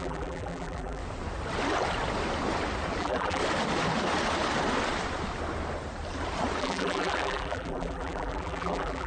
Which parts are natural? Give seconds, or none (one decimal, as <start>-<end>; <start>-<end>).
1.0-3.0; 3.4-6.6